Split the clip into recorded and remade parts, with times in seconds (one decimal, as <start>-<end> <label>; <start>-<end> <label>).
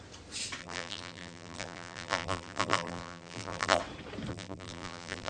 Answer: 0.0-0.6 recorded; 0.6-3.8 remade; 3.8-4.3 recorded; 4.3-5.3 remade